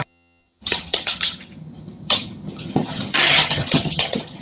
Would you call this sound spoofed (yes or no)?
yes